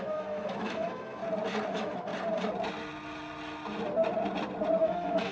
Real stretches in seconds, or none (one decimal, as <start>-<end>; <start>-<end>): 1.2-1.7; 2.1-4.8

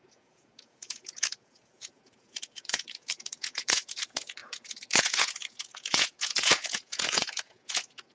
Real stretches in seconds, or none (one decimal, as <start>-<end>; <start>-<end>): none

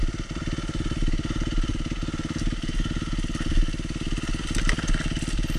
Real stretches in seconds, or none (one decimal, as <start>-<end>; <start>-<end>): 1.7-4.4

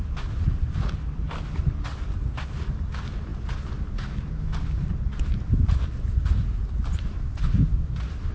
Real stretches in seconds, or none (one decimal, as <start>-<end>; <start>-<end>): 0.0-8.3